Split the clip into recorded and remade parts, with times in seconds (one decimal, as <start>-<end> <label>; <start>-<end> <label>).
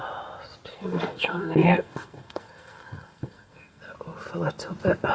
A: 0.0-0.7 recorded; 0.7-3.8 remade; 3.8-5.1 recorded